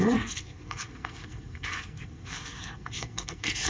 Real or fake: fake